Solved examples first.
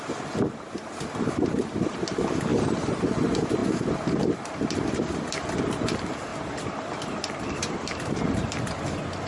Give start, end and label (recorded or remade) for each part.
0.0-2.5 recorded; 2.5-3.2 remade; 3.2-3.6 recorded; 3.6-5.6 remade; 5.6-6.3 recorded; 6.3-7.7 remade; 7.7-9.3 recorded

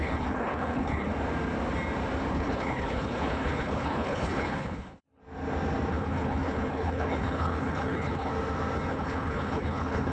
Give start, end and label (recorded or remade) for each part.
0.0-1.1 remade; 1.1-2.3 recorded; 2.3-5.2 remade; 5.2-5.9 recorded; 5.9-8.3 remade; 8.3-8.9 recorded; 8.9-10.1 remade

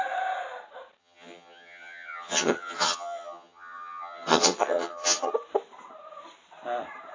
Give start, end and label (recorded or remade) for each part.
0.0-1.0 recorded; 1.0-5.3 remade; 5.3-7.1 recorded

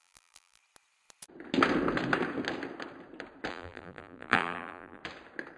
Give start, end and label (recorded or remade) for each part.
0.0-0.6 remade; 0.6-3.5 recorded; 3.5-5.0 remade; 5.0-5.6 recorded

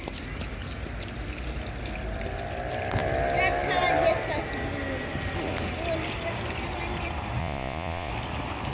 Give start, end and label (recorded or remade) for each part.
0.0-7.4 recorded; 7.4-8.1 remade; 8.1-8.7 recorded

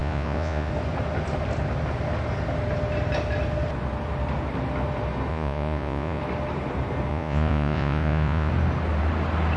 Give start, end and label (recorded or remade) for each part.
0.0-0.7 remade; 0.7-5.3 recorded; 5.3-6.2 remade; 6.2-7.1 recorded; 7.1-8.5 remade; 8.5-9.6 recorded

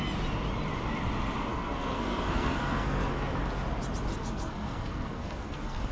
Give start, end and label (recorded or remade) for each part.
0.0-1.5 recorded; 1.5-3.3 remade; 3.3-4.1 recorded; 4.1-5.9 remade

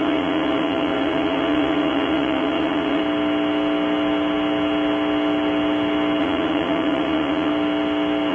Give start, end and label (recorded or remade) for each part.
0.0-3.0 remade; 3.0-6.2 recorded; 6.2-7.5 remade; 7.5-8.3 recorded